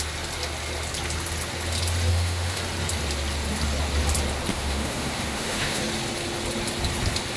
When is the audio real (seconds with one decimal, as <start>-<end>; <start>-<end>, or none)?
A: 0.0-2.1; 2.6-4.5; 5.8-7.4